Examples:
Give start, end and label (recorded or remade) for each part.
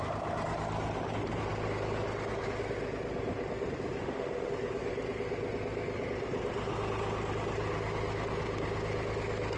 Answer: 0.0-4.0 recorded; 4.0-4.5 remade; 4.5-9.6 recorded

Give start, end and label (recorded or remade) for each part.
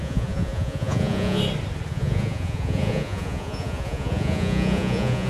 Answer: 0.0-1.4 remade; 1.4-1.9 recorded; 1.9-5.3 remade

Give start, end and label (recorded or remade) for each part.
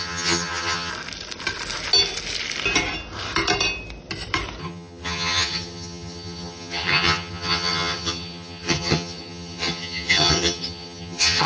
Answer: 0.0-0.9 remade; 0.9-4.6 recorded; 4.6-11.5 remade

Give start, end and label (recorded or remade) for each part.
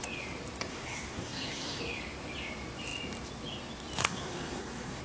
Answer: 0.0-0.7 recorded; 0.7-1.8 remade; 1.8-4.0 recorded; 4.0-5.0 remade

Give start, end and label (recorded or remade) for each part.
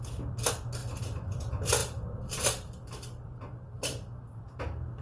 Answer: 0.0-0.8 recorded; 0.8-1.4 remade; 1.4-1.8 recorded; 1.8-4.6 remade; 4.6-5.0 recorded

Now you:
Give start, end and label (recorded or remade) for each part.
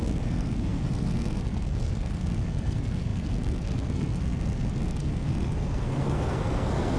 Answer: 0.0-7.0 remade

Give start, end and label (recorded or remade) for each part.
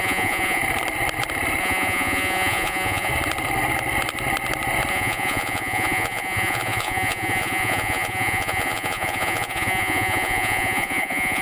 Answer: 0.0-0.6 remade; 0.6-1.6 recorded; 1.6-3.1 remade; 3.1-4.9 recorded; 4.9-11.4 remade